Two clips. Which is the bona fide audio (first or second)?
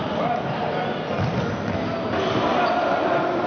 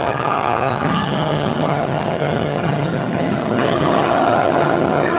first